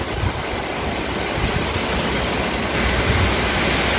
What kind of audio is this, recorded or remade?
recorded